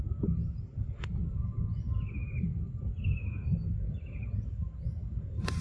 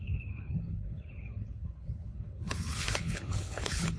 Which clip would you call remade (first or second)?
second